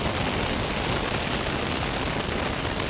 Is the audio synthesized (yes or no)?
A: no